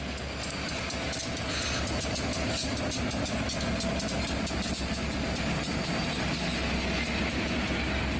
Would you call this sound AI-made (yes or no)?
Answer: no